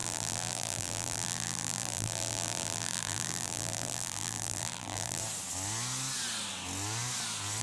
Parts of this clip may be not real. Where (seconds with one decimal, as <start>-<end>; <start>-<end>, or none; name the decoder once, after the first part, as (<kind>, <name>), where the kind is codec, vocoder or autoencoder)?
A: 0.0-5.2 (vocoder, BigVGAN v2)